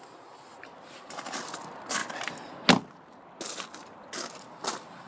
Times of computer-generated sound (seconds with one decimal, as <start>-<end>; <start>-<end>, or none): none